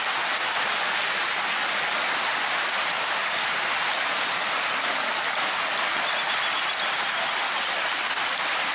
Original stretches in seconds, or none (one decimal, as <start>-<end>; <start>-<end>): 0.0-8.7